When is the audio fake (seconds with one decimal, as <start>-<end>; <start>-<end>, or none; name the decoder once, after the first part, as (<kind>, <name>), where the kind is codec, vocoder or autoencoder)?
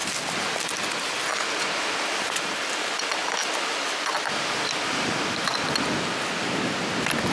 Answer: 2.2-3.1 (vocoder, BigVGAN v2); 3.6-4.1